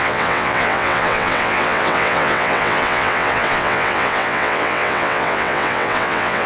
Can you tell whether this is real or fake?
fake